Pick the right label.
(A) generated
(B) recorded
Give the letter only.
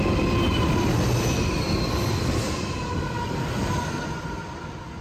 B